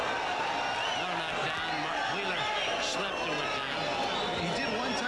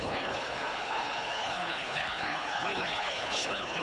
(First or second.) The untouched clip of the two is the first